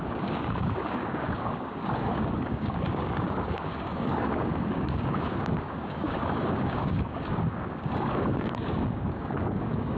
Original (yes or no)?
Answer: no